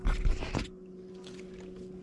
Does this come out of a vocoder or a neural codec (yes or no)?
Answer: no